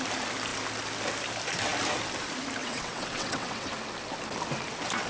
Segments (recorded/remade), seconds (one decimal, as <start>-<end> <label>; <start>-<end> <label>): 0.0-2.6 recorded; 2.6-3.7 remade; 3.7-5.1 recorded